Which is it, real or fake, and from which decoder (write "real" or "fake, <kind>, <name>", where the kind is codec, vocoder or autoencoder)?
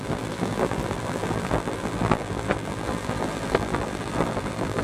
fake, vocoder, BigVGAN v2